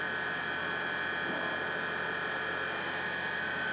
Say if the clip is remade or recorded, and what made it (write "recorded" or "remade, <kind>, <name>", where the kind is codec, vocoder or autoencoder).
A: recorded